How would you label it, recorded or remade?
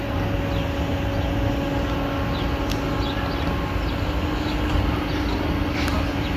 recorded